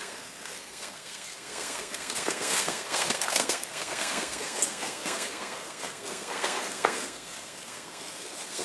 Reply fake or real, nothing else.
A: fake